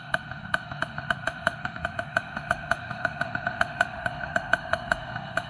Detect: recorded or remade remade